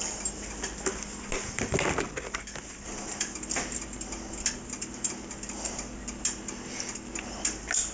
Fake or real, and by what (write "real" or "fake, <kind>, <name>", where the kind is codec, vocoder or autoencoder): real